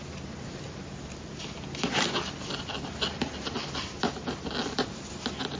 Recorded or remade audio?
recorded